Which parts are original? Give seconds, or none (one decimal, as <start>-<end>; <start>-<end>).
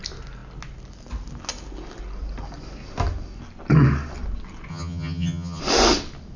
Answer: 0.0-4.7; 5.6-6.4